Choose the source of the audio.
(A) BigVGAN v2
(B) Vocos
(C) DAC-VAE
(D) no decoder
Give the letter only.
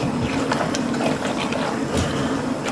A